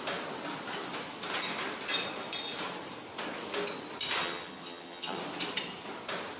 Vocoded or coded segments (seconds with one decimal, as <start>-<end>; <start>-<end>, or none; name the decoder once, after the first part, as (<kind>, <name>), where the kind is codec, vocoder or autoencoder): 4.2-5.2 (vocoder, HiFi-GAN)